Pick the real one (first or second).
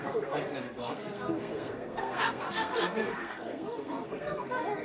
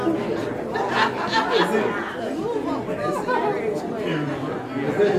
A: second